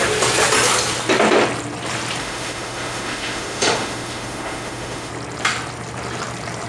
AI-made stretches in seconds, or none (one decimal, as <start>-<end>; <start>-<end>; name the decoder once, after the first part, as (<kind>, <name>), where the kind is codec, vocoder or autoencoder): 2.2-5.1 (autoencoder, DAC-VAE)